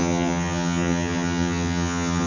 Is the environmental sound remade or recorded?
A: remade